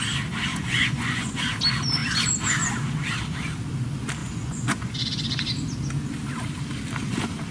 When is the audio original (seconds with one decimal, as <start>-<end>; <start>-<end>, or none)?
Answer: 0.0-0.5; 1.4-4.2; 5.0-7.5